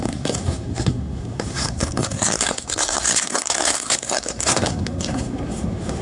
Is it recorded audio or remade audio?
remade